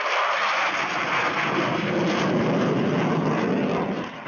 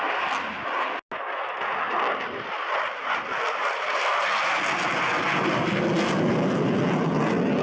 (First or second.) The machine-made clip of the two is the first